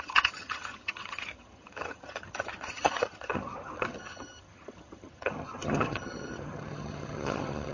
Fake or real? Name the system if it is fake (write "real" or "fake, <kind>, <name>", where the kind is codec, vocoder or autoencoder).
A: fake, vocoder, HiFi-GAN